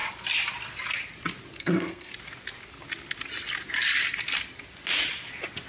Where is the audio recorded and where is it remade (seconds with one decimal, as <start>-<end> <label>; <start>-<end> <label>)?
0.0-1.6 recorded; 1.6-2.1 remade; 2.1-5.7 recorded